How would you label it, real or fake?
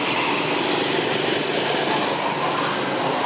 real